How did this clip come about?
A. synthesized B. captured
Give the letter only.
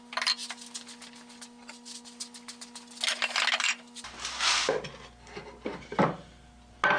B